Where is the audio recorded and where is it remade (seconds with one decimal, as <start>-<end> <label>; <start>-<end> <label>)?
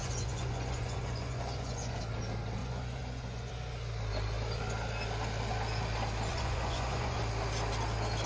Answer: 0.0-2.0 remade; 2.0-2.6 recorded; 2.6-3.5 remade; 3.5-6.3 recorded; 6.3-7.2 remade; 7.2-8.3 recorded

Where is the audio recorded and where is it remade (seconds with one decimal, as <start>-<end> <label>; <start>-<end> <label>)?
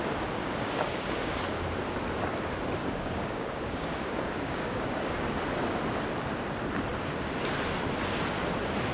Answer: 0.0-0.4 recorded; 0.4-1.4 remade; 1.4-2.8 recorded; 2.8-5.4 remade; 5.4-8.9 recorded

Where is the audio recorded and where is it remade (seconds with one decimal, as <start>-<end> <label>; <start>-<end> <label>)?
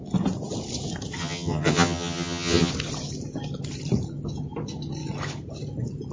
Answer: 0.0-1.2 recorded; 1.2-2.7 remade; 2.7-6.1 recorded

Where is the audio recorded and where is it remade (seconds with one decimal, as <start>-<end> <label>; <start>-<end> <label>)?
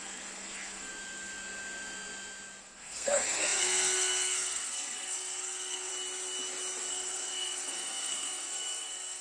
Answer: 0.0-0.9 remade; 0.9-2.6 recorded; 2.6-5.9 remade; 5.9-6.9 recorded; 6.9-9.2 remade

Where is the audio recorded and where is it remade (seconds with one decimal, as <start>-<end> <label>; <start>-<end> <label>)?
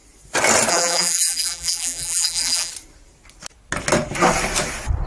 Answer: 0.0-0.7 recorded; 0.7-2.7 remade; 2.7-5.1 recorded